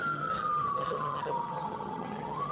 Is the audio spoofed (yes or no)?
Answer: yes